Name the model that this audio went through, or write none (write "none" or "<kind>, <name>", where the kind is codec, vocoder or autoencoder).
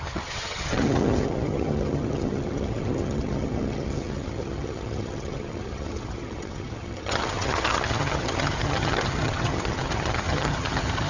vocoder, HiFi-GAN